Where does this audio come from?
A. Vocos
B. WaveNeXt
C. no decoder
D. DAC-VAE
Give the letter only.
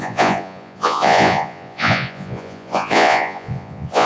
A